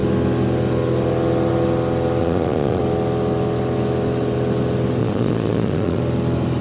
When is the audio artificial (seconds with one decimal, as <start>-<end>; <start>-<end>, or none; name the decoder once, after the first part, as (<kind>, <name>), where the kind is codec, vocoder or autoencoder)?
2.2-2.8 (vocoder, Vocos); 5.0-6.0